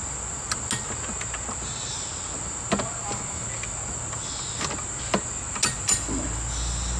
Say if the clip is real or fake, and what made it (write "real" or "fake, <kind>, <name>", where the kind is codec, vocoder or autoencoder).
real